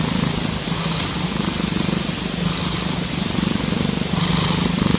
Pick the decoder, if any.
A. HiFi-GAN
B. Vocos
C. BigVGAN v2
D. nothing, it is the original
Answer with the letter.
D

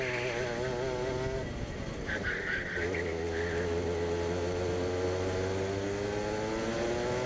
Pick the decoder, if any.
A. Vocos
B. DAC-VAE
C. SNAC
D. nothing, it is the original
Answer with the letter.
D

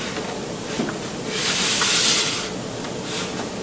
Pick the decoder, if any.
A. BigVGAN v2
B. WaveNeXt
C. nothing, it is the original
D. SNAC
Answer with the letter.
C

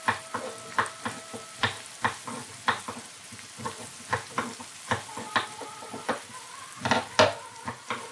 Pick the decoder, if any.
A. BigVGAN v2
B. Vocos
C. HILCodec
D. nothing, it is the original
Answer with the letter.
D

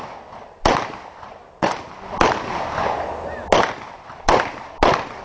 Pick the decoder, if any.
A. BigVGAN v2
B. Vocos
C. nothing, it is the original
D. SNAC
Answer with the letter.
C